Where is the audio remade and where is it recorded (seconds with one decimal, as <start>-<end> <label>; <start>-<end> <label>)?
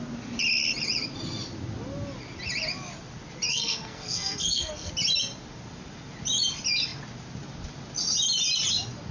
0.0-3.5 recorded; 3.5-4.9 remade; 4.9-9.1 recorded